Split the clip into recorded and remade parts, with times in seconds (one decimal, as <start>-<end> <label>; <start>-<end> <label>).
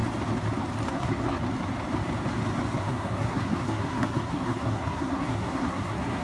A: 0.0-0.9 recorded; 0.9-1.4 remade; 1.4-2.8 recorded; 2.8-6.2 remade